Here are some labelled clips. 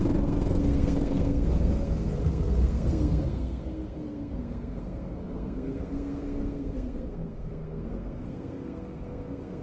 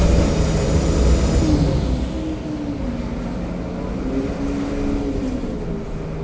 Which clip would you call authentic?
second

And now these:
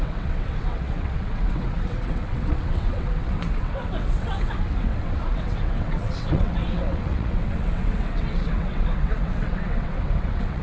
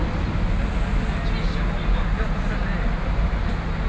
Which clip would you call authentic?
second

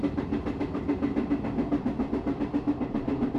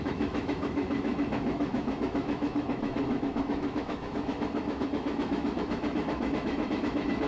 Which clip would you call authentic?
first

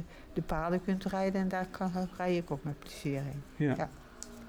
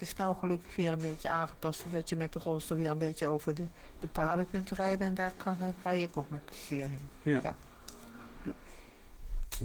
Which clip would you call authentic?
first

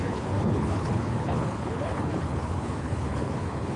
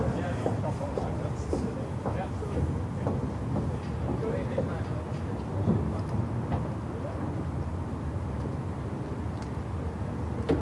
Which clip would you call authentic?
second